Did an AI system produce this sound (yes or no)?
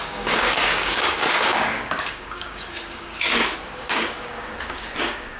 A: yes